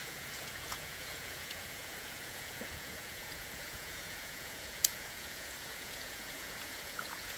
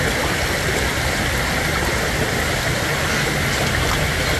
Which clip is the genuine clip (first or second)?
second